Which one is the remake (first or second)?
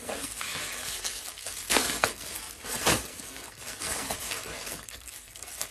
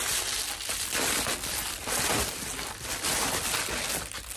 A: first